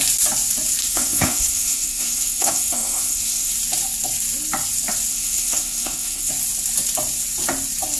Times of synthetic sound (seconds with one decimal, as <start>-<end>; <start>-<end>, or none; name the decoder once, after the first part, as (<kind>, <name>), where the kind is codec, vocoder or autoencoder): 0.8-3.5 (codec, SNAC); 5.1-6.3